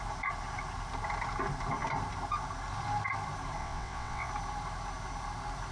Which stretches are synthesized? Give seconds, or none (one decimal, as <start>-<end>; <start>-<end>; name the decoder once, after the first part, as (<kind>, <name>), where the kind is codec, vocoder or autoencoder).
3.6-4.3 (vocoder, WaveNeXt)